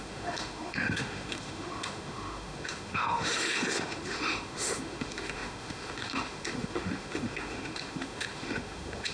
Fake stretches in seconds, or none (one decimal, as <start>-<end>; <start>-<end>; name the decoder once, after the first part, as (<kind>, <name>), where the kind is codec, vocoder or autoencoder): 0.0-9.1 (autoencoder, DAC-VAE)